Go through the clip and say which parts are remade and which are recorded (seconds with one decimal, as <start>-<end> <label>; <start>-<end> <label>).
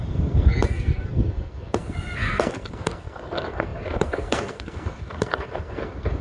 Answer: 0.0-6.2 remade